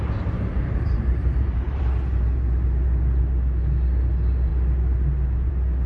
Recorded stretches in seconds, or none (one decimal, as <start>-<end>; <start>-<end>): 0.0-0.5; 1.8-5.9